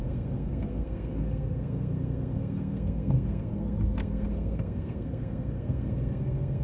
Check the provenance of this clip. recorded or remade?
remade